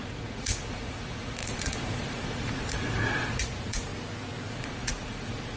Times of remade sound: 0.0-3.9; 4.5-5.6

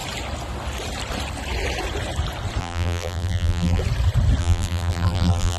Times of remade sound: 2.6-3.8; 4.4-5.6

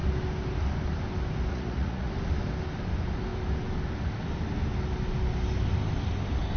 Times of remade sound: 1.5-2.1

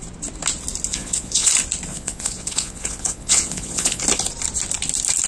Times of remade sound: 0.9-1.5; 1.9-4.0

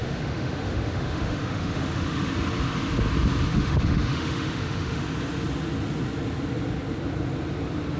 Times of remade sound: 0.0-2.3; 3.5-5.0

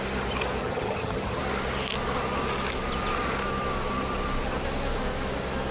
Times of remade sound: 0.6-1.4